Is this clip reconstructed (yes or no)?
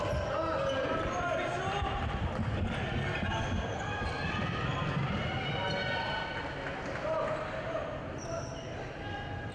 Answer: no